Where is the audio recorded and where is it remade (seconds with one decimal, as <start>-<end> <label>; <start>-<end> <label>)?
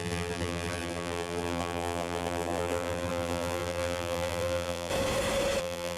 0.0-4.9 remade; 4.9-5.6 recorded; 5.6-6.0 remade